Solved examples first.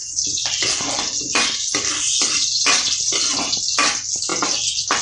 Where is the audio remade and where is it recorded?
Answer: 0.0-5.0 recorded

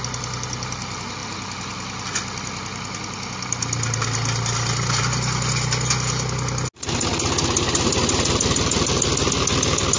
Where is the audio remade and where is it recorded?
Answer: 0.0-10.0 recorded

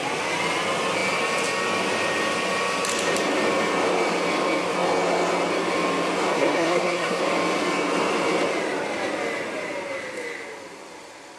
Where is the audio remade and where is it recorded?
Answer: 0.0-6.3 recorded; 6.3-7.2 remade; 7.2-11.4 recorded

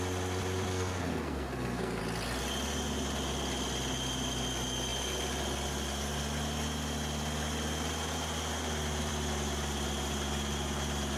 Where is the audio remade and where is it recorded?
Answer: 0.0-0.7 recorded; 0.7-2.0 remade; 2.0-11.2 recorded

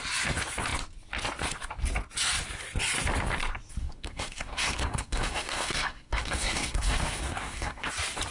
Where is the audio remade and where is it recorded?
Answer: 0.0-3.8 recorded; 3.8-7.9 remade; 7.9-8.3 recorded

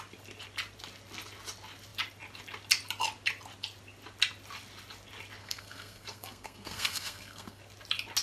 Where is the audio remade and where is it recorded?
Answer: 0.0-5.4 recorded; 5.4-7.6 remade; 7.6-8.2 recorded

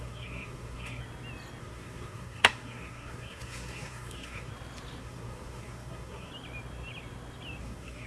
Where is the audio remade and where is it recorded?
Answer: 0.0-1.0 remade; 1.0-1.6 recorded; 1.6-4.5 remade; 4.5-5.0 recorded; 5.0-6.3 remade; 6.3-7.6 recorded; 7.6-8.1 remade

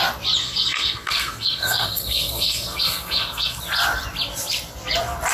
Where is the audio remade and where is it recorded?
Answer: 0.0-0.4 recorded; 0.4-3.6 remade; 3.6-5.3 recorded